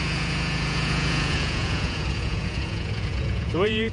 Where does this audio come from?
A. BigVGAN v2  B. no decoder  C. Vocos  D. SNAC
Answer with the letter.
C